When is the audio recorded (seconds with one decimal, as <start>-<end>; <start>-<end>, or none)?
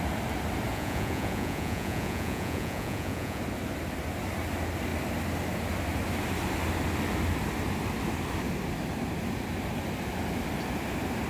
0.0-0.7; 3.4-11.3